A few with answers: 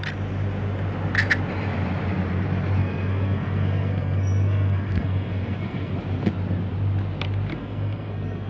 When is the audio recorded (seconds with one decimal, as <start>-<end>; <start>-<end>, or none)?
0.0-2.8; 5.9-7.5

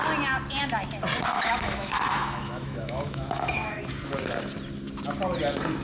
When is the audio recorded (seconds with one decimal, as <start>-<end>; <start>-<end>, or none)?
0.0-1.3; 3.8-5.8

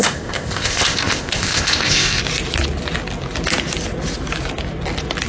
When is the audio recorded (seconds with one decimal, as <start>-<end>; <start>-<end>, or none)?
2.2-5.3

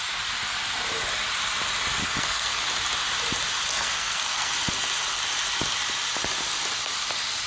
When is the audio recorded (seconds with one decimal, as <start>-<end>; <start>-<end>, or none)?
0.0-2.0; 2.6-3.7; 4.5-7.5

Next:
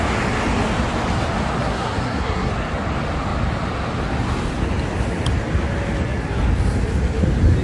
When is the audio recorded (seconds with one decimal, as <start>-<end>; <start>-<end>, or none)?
0.0-1.6; 2.5-7.6

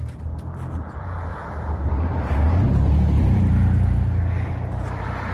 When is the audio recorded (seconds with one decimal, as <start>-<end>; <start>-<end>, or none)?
0.0-1.3; 4.5-5.3